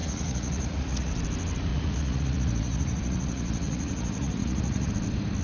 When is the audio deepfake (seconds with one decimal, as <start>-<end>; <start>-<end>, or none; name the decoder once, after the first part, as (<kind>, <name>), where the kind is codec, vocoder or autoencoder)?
0.0-1.1 (vocoder, Vocos); 1.7-4.9